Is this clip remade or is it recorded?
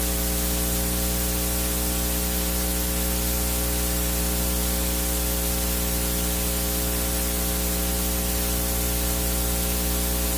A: recorded